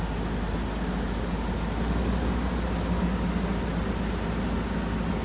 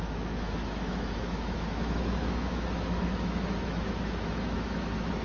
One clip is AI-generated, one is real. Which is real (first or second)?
first